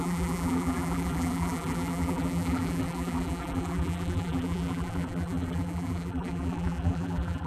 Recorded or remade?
remade